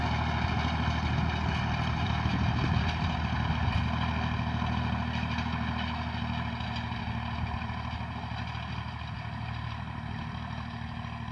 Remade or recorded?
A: recorded